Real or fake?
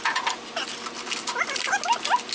real